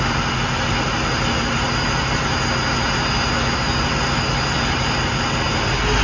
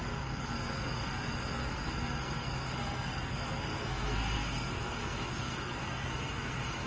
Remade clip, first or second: second